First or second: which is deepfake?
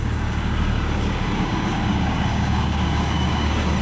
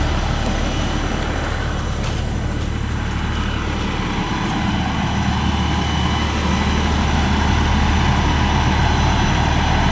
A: first